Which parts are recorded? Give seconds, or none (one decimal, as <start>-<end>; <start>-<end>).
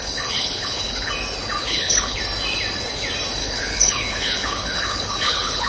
1.1-1.6; 2.2-3.4